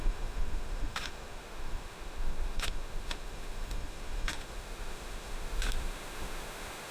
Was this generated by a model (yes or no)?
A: yes